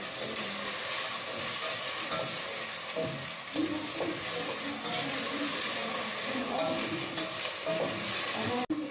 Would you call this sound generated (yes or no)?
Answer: no